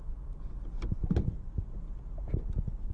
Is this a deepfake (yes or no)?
no